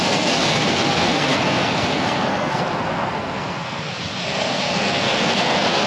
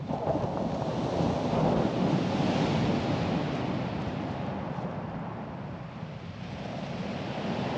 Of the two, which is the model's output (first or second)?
first